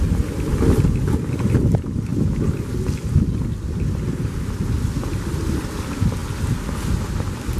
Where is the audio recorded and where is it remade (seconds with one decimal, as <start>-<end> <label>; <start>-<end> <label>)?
0.0-7.6 recorded